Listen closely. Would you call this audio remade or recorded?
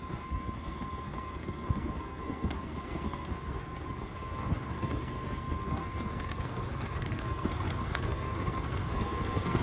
remade